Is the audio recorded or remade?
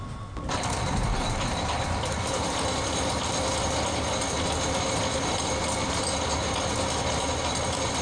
remade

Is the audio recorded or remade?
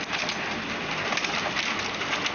recorded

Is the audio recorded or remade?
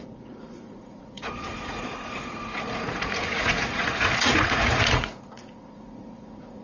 remade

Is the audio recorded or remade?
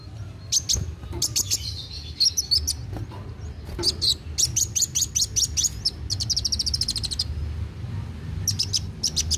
recorded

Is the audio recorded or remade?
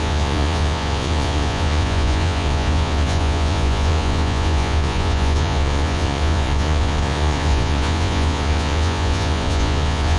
remade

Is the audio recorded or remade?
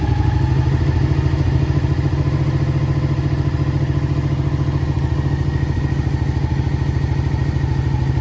recorded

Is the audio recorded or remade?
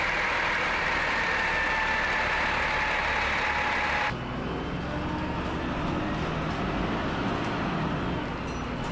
recorded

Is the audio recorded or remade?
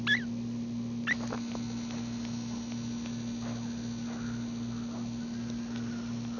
recorded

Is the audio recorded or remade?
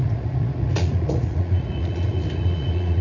remade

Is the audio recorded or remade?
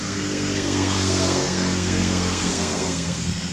remade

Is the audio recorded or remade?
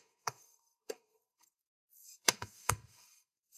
remade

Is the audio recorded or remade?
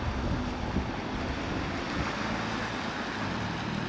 recorded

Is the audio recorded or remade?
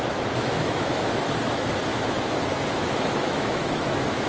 remade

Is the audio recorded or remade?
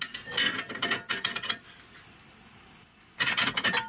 recorded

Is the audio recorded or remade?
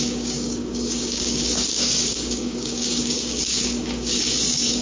remade